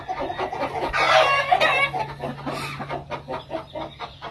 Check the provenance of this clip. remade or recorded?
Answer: recorded